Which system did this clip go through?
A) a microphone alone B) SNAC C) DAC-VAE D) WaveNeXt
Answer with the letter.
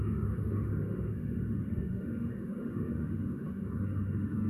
C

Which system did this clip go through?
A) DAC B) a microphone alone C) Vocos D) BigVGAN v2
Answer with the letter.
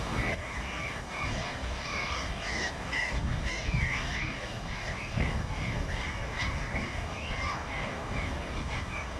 A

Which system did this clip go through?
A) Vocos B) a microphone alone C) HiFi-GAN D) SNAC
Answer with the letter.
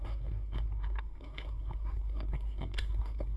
D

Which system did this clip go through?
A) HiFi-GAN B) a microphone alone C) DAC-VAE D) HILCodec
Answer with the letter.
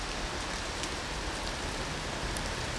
B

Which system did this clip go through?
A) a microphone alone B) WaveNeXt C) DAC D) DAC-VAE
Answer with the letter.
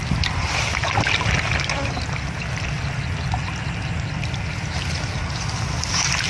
A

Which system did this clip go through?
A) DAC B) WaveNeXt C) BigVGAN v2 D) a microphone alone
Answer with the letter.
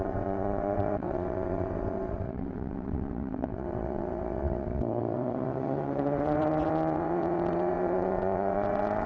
B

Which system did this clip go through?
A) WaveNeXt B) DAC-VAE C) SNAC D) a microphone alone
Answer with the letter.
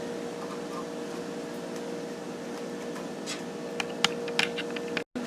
D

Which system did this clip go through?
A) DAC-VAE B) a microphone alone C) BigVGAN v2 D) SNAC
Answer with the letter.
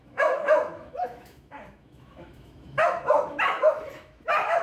A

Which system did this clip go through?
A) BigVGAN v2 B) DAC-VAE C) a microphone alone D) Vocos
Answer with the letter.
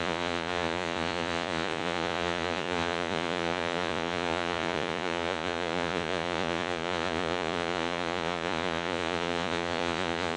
D